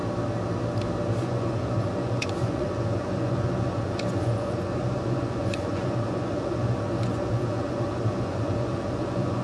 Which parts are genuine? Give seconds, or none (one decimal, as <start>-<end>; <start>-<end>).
0.0-1.2